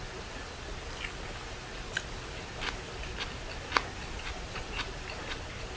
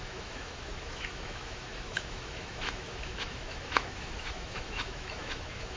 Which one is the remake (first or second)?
second